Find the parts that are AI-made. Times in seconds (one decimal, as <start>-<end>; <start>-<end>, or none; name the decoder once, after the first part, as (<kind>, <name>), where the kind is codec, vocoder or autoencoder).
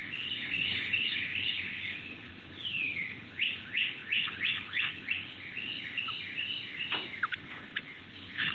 0.0-6.0 (codec, HILCodec); 7.3-8.5